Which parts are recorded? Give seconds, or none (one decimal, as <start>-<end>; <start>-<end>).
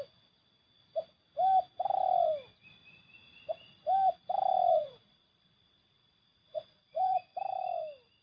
0.0-4.7; 7.2-8.2